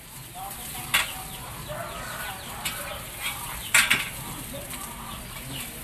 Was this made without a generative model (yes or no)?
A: yes